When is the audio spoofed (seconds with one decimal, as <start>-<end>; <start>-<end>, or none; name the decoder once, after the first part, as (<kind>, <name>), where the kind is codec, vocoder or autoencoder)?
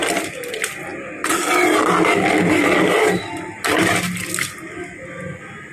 none